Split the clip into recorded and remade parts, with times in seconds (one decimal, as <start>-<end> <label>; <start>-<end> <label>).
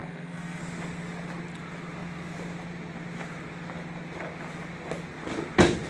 0.0-0.6 remade; 0.6-5.9 recorded